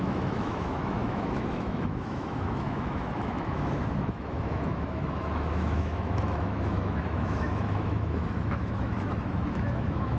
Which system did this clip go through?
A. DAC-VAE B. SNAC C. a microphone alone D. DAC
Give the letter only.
A